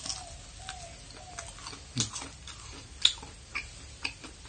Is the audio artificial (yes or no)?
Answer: no